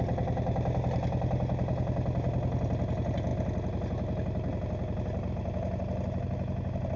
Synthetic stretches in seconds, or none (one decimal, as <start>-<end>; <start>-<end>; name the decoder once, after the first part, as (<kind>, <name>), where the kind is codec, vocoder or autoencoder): none